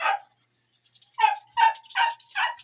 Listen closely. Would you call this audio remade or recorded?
recorded